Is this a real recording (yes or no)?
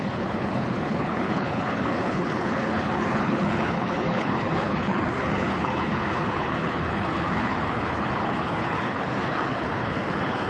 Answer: no